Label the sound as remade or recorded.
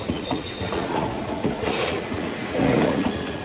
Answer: remade